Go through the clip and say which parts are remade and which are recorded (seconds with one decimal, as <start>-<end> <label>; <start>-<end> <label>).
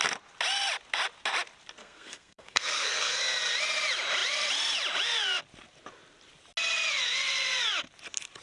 0.0-1.8 recorded; 1.8-3.2 remade; 3.2-8.4 recorded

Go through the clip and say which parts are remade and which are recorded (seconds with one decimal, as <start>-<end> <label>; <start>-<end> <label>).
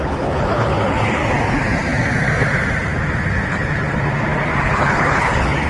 0.0-1.2 remade; 1.2-4.6 recorded; 4.6-5.7 remade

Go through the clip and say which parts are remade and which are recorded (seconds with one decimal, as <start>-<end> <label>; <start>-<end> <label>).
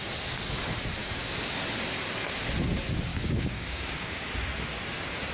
0.0-1.0 recorded; 1.0-1.6 remade; 1.6-3.1 recorded; 3.1-4.3 remade; 4.3-5.3 recorded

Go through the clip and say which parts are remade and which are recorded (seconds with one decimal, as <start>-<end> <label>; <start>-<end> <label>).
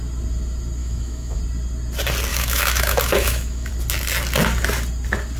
0.0-0.8 recorded; 0.8-1.4 remade; 1.4-2.3 recorded; 2.3-3.7 remade; 3.7-5.4 recorded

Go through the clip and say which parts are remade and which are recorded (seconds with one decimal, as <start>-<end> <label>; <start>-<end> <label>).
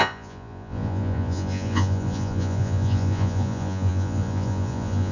0.0-5.1 remade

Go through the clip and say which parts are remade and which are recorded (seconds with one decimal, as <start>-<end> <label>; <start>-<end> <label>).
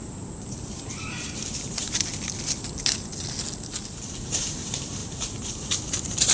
0.0-1.8 remade; 1.8-4.1 recorded; 4.1-6.3 remade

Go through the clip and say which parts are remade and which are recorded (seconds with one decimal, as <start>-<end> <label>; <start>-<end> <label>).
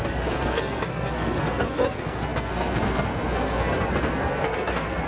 0.0-5.1 remade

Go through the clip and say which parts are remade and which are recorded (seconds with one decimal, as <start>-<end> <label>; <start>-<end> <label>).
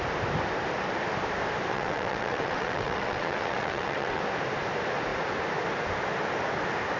0.0-1.7 recorded; 1.7-4.2 remade; 4.2-7.0 recorded